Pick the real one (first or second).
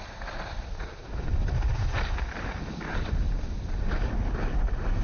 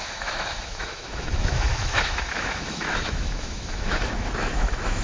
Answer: first